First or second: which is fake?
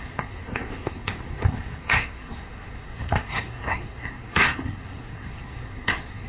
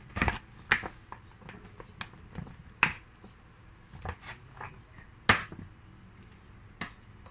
first